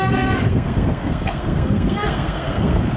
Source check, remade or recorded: remade